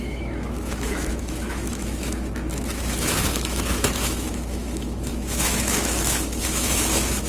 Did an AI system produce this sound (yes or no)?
yes